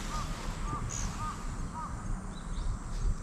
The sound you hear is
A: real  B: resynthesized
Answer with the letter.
A